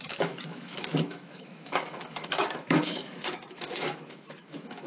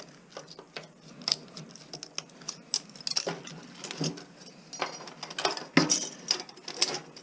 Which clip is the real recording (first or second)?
second